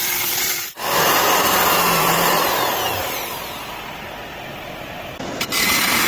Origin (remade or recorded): recorded